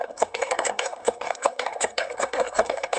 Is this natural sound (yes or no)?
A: no